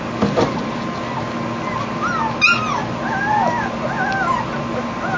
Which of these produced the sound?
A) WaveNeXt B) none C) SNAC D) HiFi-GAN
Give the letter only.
B